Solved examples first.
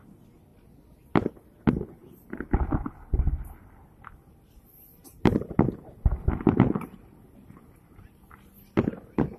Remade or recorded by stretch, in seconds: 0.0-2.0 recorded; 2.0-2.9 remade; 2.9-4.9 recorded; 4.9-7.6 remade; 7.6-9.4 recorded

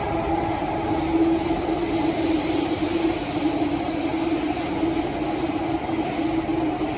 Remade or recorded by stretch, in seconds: 0.0-7.0 recorded

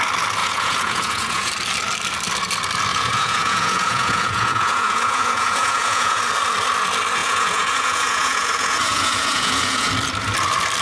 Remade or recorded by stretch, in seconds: 0.0-0.4 recorded; 0.4-1.5 remade; 1.5-2.9 recorded; 2.9-6.2 remade; 6.2-7.2 recorded; 7.2-9.9 remade; 9.9-10.8 recorded